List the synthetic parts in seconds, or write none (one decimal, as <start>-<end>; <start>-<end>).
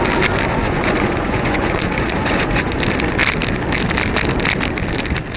0.5-2.8